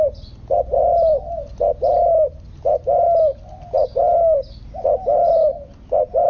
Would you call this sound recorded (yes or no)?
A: yes